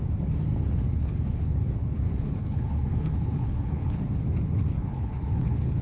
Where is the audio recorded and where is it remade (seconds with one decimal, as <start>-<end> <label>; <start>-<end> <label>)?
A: 0.0-0.5 recorded; 0.5-4.0 remade; 4.0-4.7 recorded; 4.7-5.8 remade